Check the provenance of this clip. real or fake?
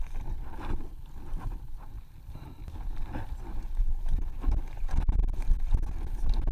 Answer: real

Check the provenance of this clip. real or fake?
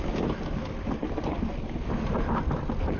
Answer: real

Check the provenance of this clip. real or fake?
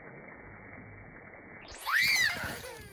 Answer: fake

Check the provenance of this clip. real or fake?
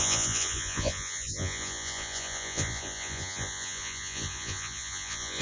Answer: fake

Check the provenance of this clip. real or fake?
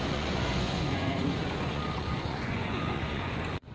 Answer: fake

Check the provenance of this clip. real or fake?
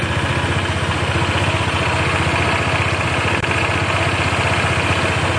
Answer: real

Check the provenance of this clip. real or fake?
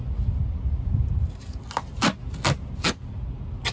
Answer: real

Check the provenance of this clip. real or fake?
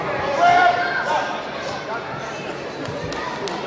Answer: real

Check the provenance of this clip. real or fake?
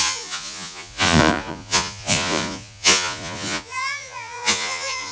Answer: fake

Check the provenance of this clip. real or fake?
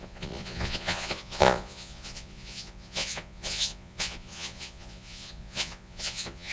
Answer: fake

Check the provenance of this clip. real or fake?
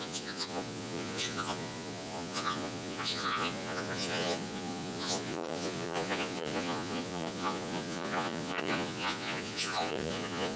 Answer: fake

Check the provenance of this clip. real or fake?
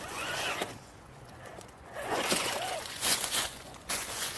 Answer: fake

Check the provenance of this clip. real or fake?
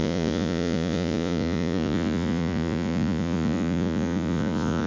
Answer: fake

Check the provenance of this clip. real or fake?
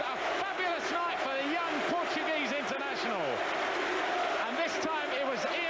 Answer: real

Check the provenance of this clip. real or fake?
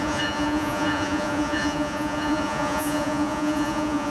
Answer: fake